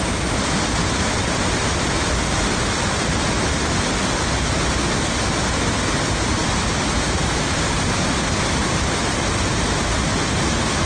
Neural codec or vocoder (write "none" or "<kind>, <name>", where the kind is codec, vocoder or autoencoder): none